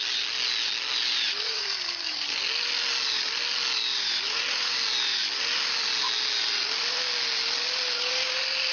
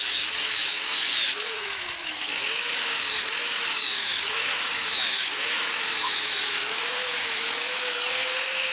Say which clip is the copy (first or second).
second